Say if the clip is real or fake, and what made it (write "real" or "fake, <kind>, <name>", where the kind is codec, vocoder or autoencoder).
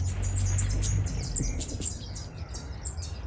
real